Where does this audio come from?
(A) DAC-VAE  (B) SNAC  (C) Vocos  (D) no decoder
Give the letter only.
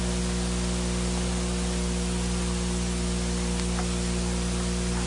D